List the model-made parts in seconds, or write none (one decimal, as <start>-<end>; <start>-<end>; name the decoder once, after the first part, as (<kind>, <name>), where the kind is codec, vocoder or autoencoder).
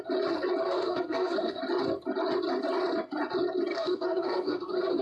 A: 0.6-1.6 (codec, SNAC); 3.7-5.0